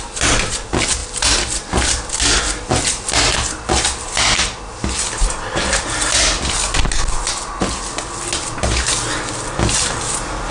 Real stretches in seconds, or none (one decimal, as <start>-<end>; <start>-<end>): 0.0-10.5